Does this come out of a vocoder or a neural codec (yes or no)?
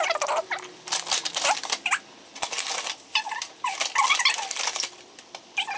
no